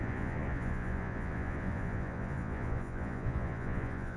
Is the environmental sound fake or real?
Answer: fake